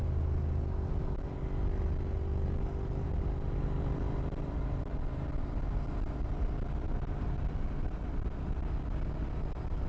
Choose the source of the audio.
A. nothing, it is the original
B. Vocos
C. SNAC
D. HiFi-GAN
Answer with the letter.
A